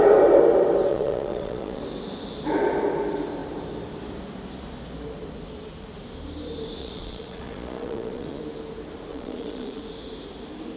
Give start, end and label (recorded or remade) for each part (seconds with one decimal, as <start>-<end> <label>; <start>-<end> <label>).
0.0-0.9 recorded; 0.9-1.8 remade; 1.8-6.8 recorded; 6.8-8.4 remade; 8.4-9.1 recorded; 9.1-9.8 remade; 9.8-10.8 recorded